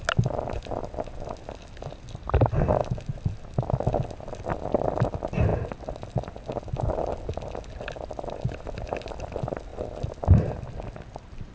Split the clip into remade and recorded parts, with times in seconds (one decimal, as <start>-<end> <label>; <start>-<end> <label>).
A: 0.0-11.5 recorded